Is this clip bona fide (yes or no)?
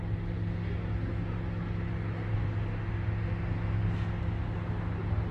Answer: yes